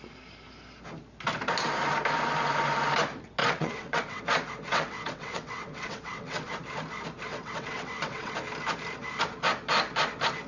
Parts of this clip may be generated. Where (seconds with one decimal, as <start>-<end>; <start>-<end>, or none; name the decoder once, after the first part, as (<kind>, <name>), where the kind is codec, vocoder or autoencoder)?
3.4-4.2 (vocoder, WaveNeXt); 4.7-6.5; 7.3-8.3